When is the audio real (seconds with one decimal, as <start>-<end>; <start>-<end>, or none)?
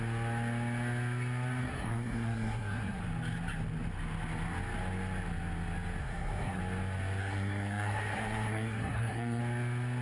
0.0-1.6; 3.0-6.0; 6.6-7.2; 9.4-10.0